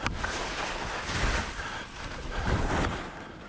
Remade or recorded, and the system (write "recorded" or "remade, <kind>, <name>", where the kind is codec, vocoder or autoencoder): recorded